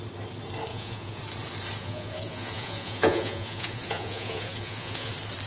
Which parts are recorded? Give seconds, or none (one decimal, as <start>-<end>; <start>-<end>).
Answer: 0.0-0.7; 1.2-1.8; 5.1-5.5